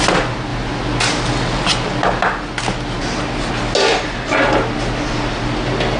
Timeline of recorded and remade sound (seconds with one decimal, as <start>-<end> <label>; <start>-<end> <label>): 0.0-6.0 recorded